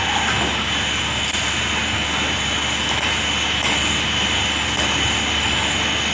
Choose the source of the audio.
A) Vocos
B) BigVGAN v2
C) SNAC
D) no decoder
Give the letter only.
D